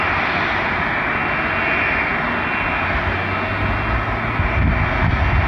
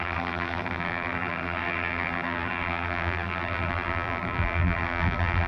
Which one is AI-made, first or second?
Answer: second